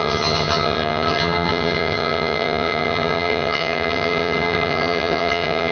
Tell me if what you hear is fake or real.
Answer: fake